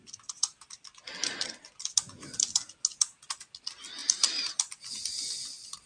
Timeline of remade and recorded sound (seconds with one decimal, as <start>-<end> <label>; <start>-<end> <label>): 0.0-5.9 recorded